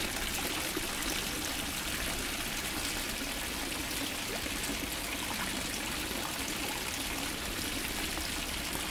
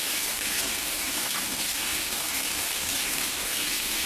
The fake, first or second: second